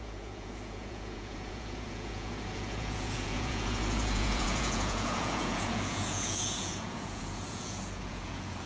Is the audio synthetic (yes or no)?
yes